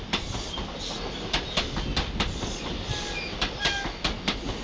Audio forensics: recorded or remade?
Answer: recorded